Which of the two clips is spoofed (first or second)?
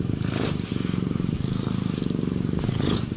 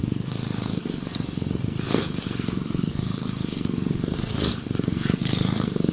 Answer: second